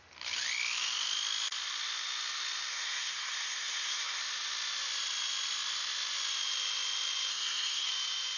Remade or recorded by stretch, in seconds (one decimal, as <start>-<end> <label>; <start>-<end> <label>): 0.0-2.7 recorded; 2.7-4.2 remade; 4.2-7.3 recorded; 7.3-7.9 remade; 7.9-8.4 recorded